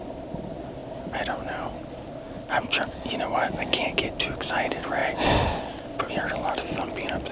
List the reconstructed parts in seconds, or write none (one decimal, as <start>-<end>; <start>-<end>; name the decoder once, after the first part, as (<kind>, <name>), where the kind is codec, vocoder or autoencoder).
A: none